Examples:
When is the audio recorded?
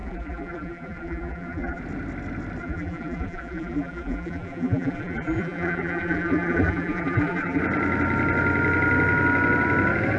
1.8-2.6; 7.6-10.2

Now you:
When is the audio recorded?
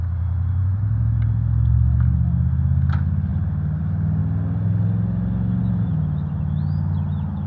0.0-7.5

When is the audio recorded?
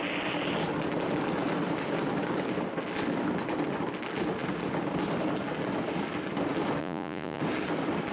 0.0-6.8; 7.4-8.1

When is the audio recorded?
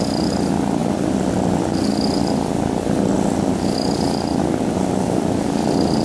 0.0-6.0